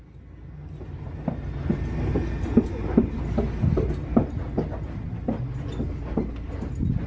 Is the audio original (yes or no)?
yes